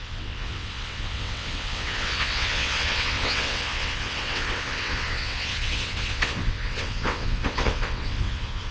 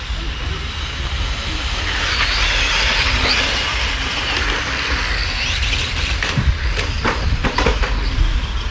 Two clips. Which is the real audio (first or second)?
second